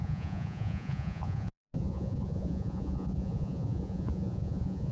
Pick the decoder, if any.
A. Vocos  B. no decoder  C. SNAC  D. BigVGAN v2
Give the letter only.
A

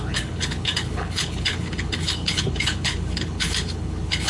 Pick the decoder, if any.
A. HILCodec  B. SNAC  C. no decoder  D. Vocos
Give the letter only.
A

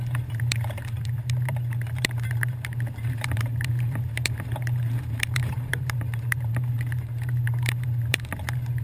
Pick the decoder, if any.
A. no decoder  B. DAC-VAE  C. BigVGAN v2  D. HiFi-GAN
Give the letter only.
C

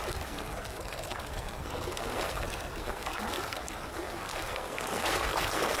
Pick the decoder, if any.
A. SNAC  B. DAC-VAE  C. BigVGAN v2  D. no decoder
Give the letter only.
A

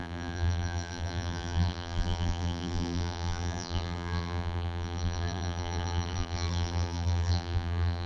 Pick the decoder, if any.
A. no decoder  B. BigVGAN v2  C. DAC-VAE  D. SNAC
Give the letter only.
B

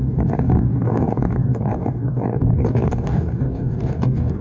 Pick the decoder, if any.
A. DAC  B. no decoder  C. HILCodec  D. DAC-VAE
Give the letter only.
A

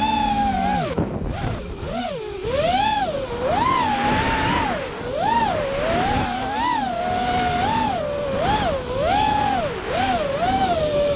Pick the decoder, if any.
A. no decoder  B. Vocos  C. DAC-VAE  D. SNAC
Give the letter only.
A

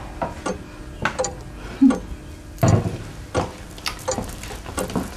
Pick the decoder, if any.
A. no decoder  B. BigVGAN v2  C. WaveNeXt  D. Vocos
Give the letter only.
A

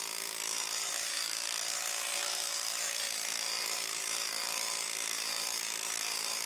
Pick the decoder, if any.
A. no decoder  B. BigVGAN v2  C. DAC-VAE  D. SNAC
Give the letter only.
B